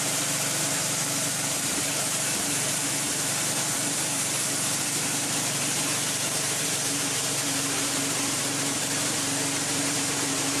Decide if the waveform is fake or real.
fake